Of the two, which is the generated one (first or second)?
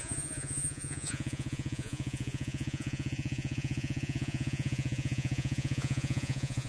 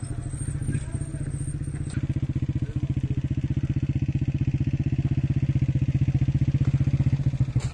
first